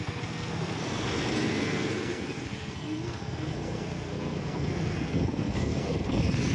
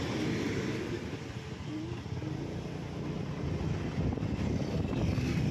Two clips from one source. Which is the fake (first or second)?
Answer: first